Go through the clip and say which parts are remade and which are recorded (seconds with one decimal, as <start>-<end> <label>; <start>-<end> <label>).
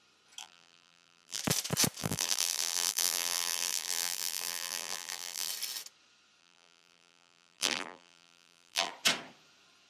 0.0-0.4 recorded; 0.4-1.4 remade; 1.4-2.0 recorded; 2.0-5.5 remade; 5.5-6.4 recorded; 6.4-8.9 remade; 8.9-9.9 recorded